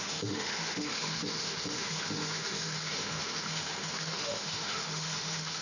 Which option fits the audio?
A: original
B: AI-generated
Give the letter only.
B